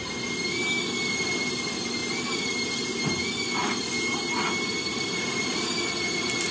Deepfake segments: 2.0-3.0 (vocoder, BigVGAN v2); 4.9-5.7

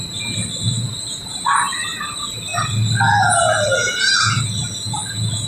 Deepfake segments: 2.5-3.3 (vocoder, BigVGAN v2)